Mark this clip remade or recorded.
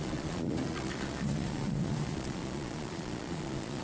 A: remade